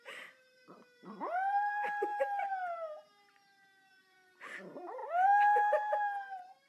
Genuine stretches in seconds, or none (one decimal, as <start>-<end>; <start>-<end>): 2.1-3.9; 5.0-6.7